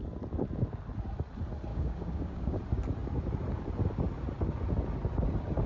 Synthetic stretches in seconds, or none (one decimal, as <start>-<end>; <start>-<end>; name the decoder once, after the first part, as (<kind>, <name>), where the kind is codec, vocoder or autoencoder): 1.7-2.6 (codec, DAC)